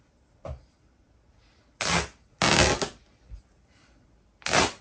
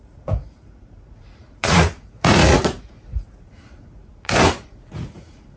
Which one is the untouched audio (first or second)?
first